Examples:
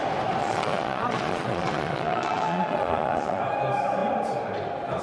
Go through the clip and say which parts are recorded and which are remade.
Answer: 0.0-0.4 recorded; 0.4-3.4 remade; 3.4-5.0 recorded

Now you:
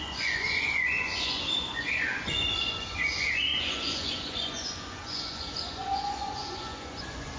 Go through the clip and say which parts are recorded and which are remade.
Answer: 0.0-7.4 remade

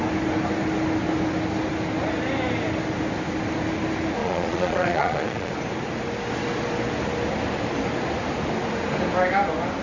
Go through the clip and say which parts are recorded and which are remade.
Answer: 0.0-4.2 recorded; 4.2-5.5 remade; 5.5-9.8 recorded

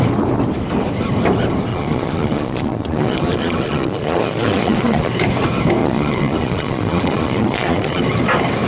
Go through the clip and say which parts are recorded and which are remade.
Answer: 0.0-1.7 recorded; 1.7-5.1 remade; 5.1-5.8 recorded; 5.8-8.0 remade; 8.0-8.7 recorded

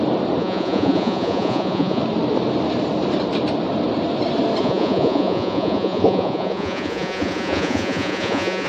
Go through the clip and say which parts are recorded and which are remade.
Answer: 0.0-0.4 recorded; 0.4-2.0 remade; 2.0-4.6 recorded; 4.6-8.7 remade

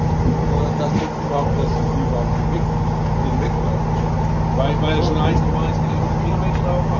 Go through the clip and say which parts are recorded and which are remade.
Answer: 0.0-7.0 recorded

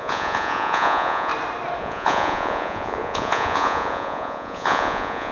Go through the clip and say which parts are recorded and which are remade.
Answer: 0.0-1.3 remade; 1.3-1.8 recorded; 1.8-5.3 remade